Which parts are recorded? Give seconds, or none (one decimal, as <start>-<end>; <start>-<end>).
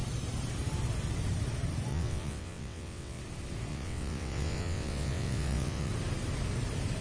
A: 0.0-1.9; 3.2-3.7; 5.9-7.0